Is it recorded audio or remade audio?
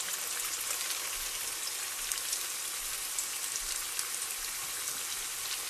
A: recorded